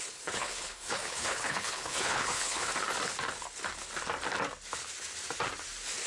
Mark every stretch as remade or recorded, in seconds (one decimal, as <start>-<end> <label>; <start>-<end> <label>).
0.0-2.7 remade; 2.7-6.1 recorded